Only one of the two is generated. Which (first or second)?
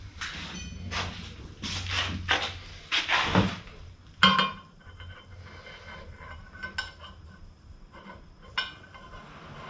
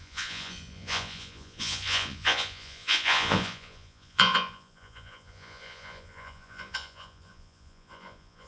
second